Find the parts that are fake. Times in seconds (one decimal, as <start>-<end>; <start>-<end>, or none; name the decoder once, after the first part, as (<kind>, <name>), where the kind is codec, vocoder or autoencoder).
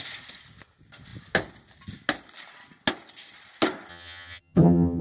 3.9-5.0 (vocoder, HiFi-GAN)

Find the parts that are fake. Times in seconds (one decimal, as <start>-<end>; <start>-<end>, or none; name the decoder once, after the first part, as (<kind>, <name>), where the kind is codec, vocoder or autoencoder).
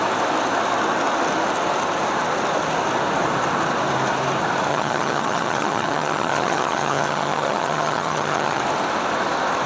4.7-8.6 (vocoder, HiFi-GAN)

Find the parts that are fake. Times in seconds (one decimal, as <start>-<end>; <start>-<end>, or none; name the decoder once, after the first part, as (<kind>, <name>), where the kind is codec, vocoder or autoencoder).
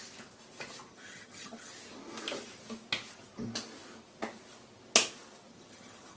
0.9-1.7 (vocoder, HiFi-GAN); 5.5-6.2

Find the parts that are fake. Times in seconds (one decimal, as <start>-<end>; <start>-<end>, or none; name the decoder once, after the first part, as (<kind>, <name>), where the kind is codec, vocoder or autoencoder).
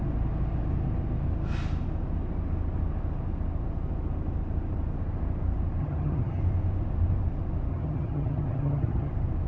5.8-6.4 (vocoder, HiFi-GAN); 7.7-9.1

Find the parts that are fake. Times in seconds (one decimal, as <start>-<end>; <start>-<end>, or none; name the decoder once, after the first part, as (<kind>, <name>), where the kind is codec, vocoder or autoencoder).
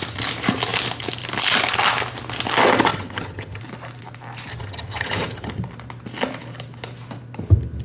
2.9-3.6 (vocoder, HiFi-GAN); 4.5-5.5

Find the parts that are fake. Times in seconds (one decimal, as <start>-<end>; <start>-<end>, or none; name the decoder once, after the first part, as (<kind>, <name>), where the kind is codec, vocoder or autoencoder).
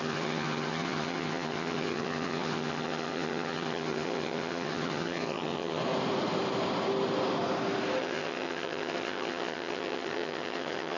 0.0-5.8 (vocoder, HiFi-GAN); 8.0-11.0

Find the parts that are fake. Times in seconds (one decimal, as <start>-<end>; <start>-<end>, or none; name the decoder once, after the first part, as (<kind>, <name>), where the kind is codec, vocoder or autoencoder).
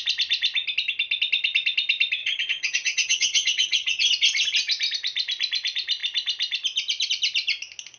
2.2-4.0 (vocoder, HiFi-GAN)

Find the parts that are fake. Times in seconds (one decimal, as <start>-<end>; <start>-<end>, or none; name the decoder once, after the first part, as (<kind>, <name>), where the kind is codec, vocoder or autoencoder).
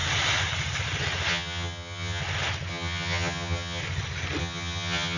1.3-2.2 (vocoder, HiFi-GAN); 2.7-3.8; 4.4-5.2